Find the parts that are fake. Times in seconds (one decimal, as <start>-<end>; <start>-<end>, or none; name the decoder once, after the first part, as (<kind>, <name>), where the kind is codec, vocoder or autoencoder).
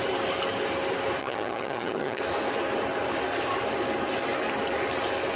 1.2-2.2 (vocoder, HiFi-GAN)